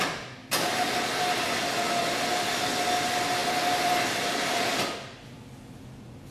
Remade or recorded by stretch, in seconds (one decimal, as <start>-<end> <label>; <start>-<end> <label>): 0.0-6.3 recorded